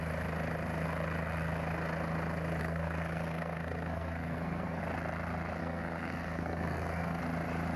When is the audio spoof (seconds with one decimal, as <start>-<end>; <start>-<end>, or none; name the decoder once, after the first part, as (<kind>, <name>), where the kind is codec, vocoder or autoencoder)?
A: 2.6-4.8 (codec, SNAC); 5.6-7.2